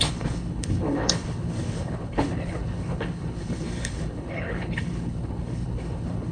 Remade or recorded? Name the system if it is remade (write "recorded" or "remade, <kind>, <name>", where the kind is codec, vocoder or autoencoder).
remade, codec, HILCodec